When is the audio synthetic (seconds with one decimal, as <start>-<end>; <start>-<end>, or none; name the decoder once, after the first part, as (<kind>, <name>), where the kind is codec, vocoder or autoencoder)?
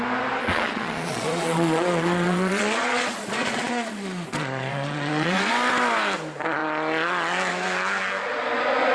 0.4-5.5 (vocoder, Vocos)